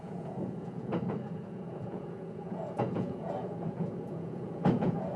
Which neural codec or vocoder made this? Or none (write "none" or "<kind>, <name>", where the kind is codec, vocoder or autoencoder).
vocoder, Vocos